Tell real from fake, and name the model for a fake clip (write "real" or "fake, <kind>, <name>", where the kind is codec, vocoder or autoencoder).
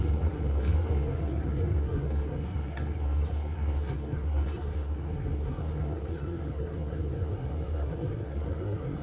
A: fake, codec, SNAC